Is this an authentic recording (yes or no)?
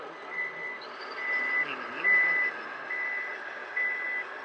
yes